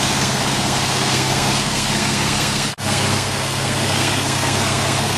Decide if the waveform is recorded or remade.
remade